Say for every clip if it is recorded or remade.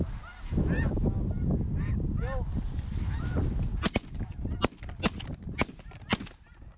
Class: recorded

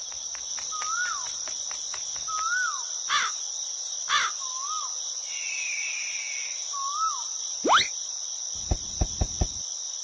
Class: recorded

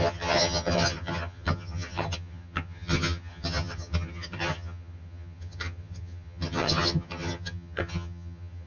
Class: remade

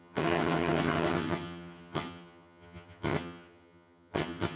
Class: remade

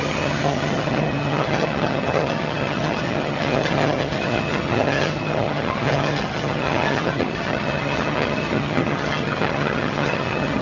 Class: remade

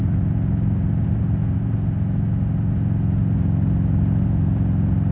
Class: recorded